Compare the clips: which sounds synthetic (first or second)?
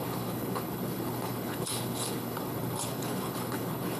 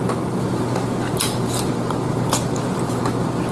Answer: first